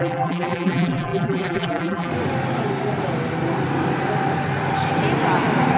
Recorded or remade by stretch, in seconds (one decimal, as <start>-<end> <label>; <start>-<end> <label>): 0.0-2.1 remade; 2.1-5.8 recorded